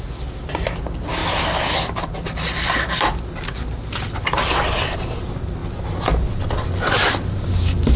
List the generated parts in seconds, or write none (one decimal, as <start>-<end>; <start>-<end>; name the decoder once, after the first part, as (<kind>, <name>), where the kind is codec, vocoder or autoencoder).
none